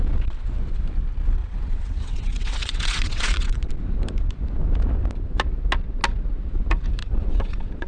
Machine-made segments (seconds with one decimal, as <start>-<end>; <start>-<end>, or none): 1.4-3.7; 7.0-7.9